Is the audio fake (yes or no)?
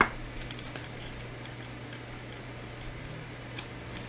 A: no